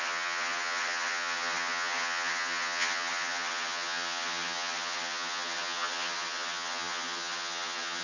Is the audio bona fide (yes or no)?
no